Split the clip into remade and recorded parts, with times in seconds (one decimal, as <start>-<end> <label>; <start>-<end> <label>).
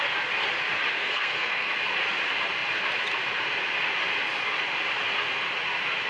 0.0-0.9 recorded; 0.9-1.7 remade; 1.7-6.1 recorded